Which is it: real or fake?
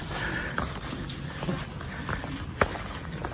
real